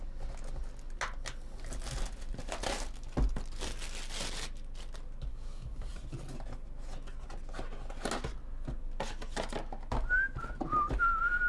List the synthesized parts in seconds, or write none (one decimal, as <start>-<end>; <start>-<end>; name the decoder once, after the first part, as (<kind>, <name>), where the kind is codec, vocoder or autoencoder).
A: 5.3-5.9 (codec, DAC)